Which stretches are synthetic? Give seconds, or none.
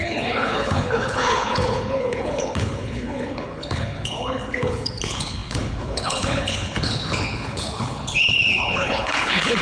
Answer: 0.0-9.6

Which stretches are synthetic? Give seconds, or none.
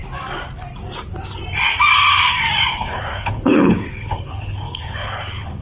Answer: 2.7-5.6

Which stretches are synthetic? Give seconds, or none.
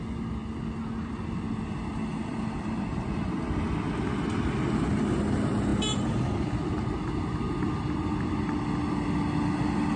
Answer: none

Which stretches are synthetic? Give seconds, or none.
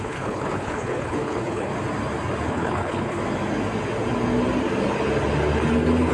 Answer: 0.0-1.7; 2.5-3.2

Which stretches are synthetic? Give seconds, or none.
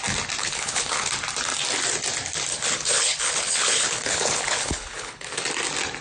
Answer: 0.4-1.1; 2.5-5.4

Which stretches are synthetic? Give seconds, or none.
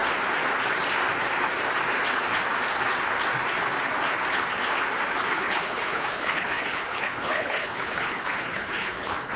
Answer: 5.3-9.4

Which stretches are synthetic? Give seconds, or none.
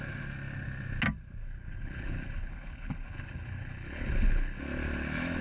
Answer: 1.4-4.6